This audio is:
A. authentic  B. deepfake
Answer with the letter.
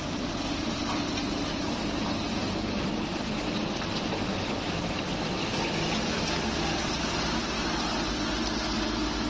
A